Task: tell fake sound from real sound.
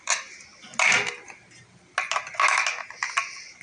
real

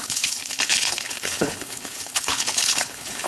fake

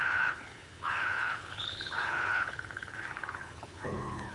fake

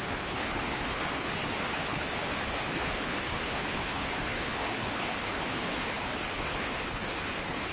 fake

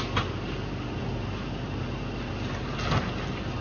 real